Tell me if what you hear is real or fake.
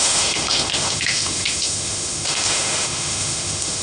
fake